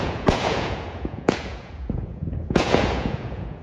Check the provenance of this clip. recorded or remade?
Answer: remade